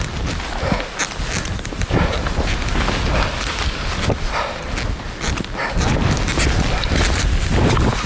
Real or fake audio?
real